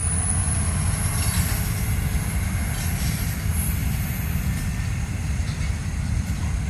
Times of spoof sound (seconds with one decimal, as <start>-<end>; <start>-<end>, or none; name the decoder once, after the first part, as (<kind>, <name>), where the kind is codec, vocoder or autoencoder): none